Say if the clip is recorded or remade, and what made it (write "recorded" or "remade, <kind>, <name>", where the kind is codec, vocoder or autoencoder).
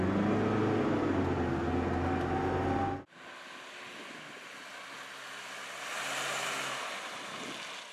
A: recorded